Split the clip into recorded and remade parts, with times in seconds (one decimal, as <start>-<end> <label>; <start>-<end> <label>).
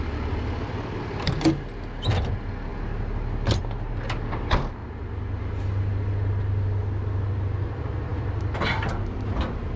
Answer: 0.0-9.8 recorded